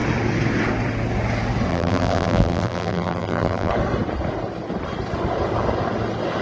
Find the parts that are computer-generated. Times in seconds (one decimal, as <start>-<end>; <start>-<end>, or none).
1.7-3.7